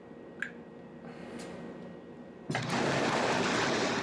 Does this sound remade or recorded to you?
recorded